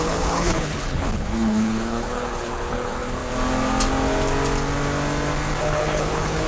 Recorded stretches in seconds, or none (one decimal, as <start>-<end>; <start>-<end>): 3.2-5.6